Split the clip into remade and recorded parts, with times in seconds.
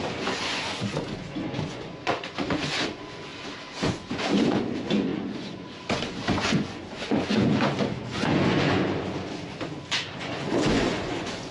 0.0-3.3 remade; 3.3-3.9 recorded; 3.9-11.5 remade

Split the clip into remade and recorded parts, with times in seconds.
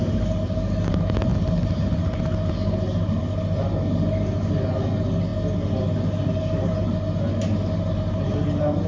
0.0-8.9 recorded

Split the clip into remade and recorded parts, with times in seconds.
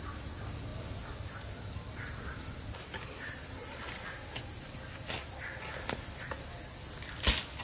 0.0-7.6 recorded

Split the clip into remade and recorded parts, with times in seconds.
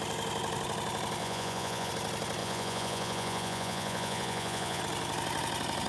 0.0-1.2 recorded; 1.2-1.9 remade; 1.9-2.4 recorded; 2.4-4.8 remade; 4.8-5.9 recorded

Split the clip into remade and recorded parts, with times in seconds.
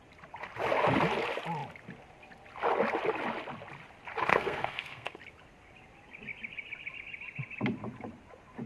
0.0-4.3 recorded; 4.3-5.2 remade; 5.2-8.7 recorded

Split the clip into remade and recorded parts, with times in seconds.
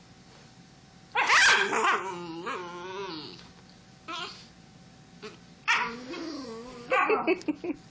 0.0-7.9 recorded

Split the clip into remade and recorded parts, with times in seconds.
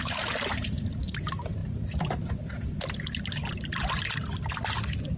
0.0-5.2 recorded